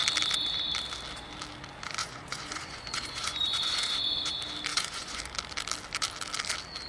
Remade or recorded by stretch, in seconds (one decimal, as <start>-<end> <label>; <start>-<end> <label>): 0.0-2.0 recorded; 2.0-4.3 remade; 4.3-4.7 recorded; 4.7-5.2 remade; 5.2-6.9 recorded